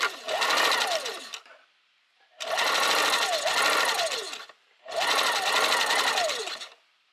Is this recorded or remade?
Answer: remade